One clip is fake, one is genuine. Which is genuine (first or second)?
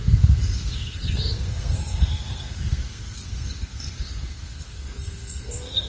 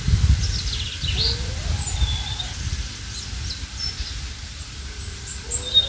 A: second